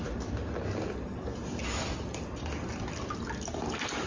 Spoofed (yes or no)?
no